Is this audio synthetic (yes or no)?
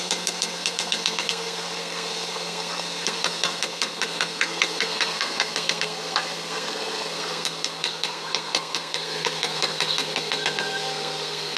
yes